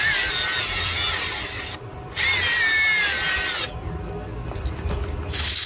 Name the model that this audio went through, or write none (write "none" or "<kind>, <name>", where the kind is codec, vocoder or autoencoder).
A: none